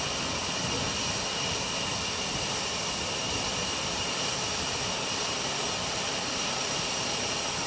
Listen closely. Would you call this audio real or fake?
real